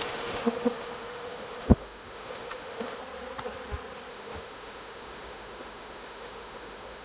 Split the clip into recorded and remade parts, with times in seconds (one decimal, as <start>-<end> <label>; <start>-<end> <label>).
0.0-3.0 remade; 3.0-4.1 recorded; 4.1-7.0 remade